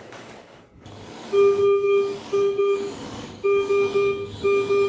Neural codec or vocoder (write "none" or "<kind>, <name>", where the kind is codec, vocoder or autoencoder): codec, DAC